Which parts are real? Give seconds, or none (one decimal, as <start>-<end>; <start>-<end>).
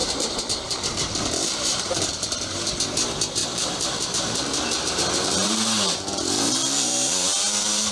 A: 2.7-3.4